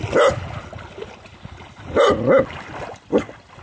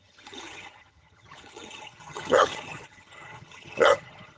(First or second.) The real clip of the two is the first